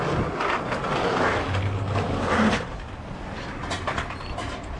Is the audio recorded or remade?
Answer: recorded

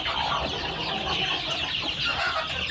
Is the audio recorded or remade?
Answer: recorded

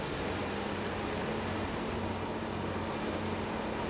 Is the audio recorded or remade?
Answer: recorded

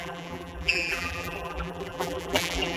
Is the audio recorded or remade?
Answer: remade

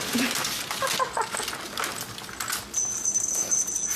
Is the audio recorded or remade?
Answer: recorded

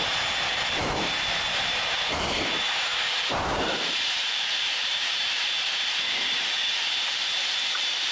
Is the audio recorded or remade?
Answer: remade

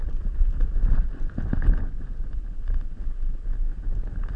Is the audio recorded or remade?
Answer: recorded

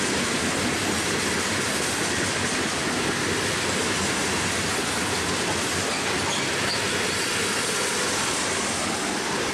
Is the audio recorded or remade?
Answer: recorded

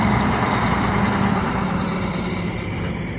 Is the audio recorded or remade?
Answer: remade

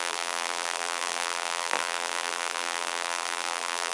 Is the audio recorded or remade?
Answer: remade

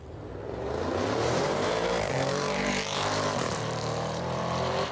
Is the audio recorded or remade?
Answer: remade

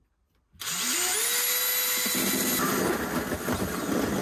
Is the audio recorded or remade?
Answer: recorded